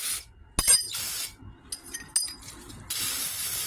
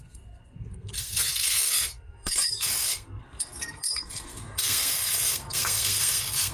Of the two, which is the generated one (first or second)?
second